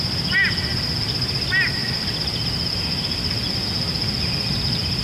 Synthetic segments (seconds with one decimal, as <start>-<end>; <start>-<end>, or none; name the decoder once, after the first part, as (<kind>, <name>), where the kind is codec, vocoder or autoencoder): none